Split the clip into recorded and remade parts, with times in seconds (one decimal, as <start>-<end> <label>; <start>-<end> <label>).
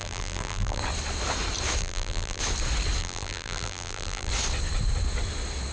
0.0-0.8 remade; 0.8-1.8 recorded; 1.8-2.4 remade; 2.4-3.0 recorded; 3.0-4.3 remade; 4.3-5.7 recorded